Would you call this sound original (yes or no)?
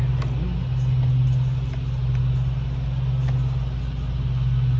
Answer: yes